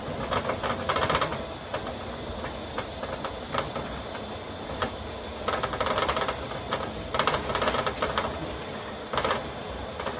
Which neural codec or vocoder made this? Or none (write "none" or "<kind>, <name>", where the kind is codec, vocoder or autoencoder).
none